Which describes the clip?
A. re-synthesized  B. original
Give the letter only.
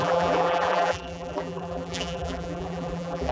A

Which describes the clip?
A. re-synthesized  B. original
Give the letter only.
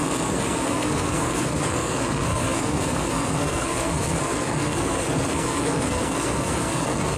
A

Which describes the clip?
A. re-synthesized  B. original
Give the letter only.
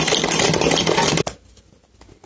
B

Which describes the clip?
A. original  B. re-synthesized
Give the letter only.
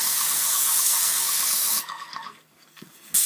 B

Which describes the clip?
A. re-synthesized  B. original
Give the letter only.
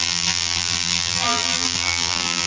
A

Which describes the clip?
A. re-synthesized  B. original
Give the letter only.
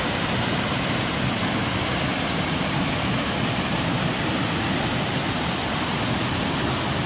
B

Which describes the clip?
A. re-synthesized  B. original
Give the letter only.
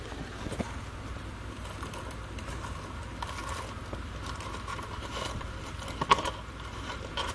B